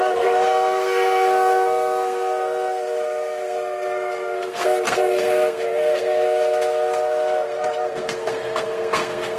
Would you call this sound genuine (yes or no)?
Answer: no